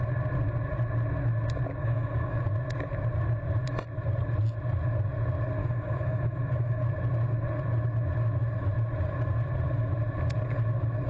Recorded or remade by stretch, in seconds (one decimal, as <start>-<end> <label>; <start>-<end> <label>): 0.0-1.8 recorded; 1.8-2.4 remade; 2.4-5.6 recorded; 5.6-6.8 remade; 6.8-11.1 recorded

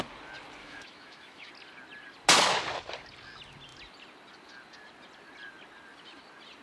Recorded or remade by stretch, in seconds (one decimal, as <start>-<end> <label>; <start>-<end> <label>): 0.0-0.6 recorded; 0.6-1.5 remade; 1.5-6.6 recorded

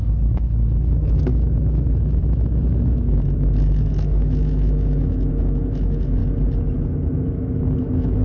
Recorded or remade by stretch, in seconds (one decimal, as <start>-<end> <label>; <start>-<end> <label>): 0.0-6.2 remade; 6.2-7.1 recorded; 7.1-8.2 remade

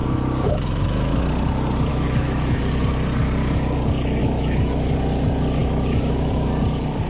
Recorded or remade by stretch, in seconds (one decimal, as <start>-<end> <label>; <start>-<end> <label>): 0.0-1.2 remade; 1.2-1.9 recorded; 1.9-2.6 remade; 2.6-4.2 recorded; 4.2-4.9 remade; 4.9-5.6 recorded; 5.6-6.3 remade; 6.3-7.1 recorded

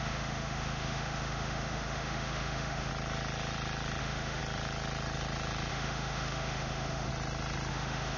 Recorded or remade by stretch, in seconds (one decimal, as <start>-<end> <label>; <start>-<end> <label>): 0.0-2.9 remade; 2.9-4.0 recorded; 4.0-4.4 remade; 4.4-5.7 recorded; 5.7-7.1 remade; 7.1-7.7 recorded; 7.7-8.2 remade

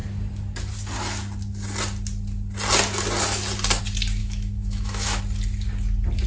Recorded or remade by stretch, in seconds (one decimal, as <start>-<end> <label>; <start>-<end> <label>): 0.0-4.2 recorded; 4.2-5.2 remade; 5.2-6.3 recorded

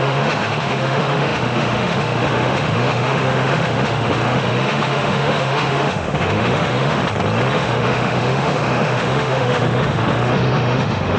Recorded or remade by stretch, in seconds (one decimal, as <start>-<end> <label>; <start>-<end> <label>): 0.0-7.0 remade; 7.0-7.5 recorded; 7.5-11.2 remade

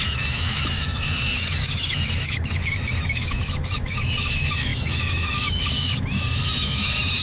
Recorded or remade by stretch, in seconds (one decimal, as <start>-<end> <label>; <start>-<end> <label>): 0.0-7.2 remade